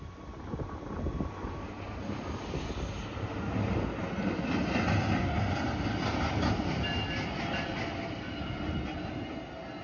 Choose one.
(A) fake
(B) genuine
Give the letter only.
B